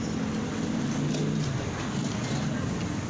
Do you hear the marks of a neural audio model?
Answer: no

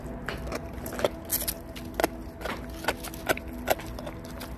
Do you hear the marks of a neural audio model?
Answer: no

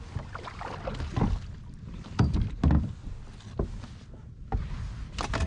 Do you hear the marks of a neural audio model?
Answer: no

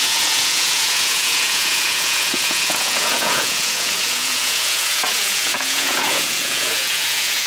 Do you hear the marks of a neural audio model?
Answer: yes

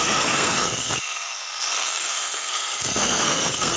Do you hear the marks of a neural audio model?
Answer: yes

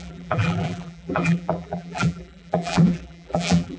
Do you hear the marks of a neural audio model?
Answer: yes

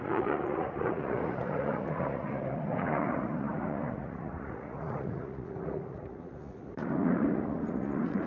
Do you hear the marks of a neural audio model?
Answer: yes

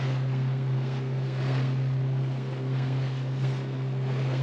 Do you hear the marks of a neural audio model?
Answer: yes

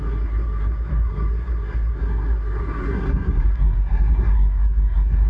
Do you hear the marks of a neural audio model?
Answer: yes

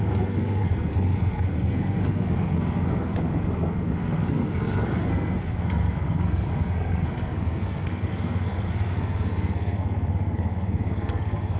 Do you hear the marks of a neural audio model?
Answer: yes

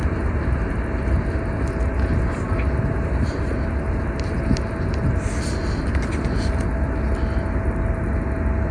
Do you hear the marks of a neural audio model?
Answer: no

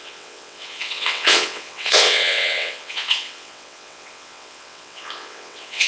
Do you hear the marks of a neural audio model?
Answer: yes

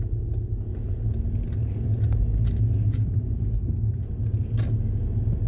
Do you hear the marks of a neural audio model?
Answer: no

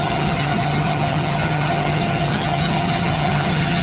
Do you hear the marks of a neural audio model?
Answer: yes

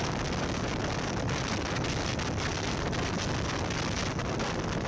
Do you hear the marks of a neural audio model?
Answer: no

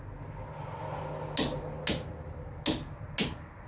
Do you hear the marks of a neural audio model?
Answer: no